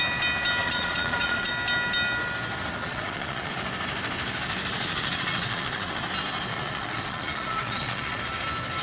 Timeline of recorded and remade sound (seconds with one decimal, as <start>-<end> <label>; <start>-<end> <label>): 0.0-0.6 recorded; 0.6-1.5 remade; 1.5-2.8 recorded; 2.8-3.5 remade; 3.5-4.7 recorded; 4.7-6.0 remade; 6.0-6.5 recorded; 6.5-8.2 remade; 8.2-8.8 recorded